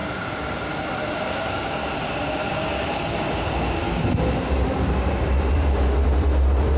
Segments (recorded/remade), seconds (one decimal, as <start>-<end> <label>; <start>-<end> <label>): 0.0-1.3 recorded; 1.3-1.8 remade; 1.8-2.5 recorded; 2.5-3.8 remade; 3.8-6.8 recorded